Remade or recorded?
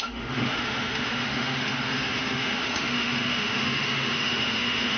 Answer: remade